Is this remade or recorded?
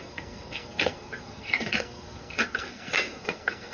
remade